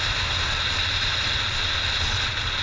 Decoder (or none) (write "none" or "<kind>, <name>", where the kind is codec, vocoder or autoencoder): none